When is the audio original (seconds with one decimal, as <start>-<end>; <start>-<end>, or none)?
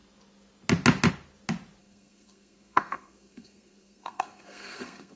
0.0-1.8